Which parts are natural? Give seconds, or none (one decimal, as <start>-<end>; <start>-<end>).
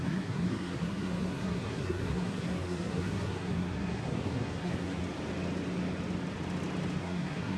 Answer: 5.0-7.0